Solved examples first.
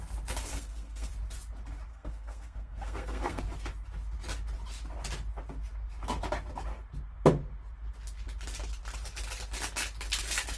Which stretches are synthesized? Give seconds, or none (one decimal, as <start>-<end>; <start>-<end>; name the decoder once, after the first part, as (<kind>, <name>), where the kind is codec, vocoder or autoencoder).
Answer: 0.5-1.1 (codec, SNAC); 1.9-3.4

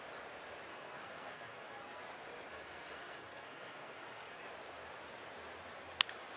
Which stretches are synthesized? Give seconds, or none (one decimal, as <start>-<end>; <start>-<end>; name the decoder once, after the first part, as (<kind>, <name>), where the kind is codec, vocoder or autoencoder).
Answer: 0.7-2.0 (codec, SNAC); 2.5-4.4

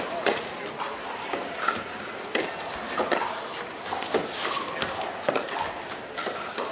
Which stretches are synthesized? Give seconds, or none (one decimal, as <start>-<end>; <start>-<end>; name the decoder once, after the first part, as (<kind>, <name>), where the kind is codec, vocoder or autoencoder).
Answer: none

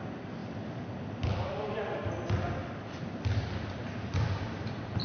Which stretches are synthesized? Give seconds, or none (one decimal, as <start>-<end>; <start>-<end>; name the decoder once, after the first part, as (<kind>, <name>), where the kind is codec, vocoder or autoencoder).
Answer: none

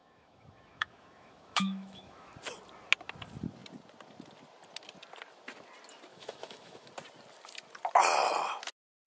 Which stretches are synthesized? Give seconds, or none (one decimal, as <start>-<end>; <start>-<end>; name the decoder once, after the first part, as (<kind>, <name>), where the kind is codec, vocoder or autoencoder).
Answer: 0.0-2.3 (autoencoder, DAC-VAE); 6.1-6.9

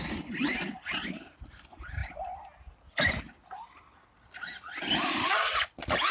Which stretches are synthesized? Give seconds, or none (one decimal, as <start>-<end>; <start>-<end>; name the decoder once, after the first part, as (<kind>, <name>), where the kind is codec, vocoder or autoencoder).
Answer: none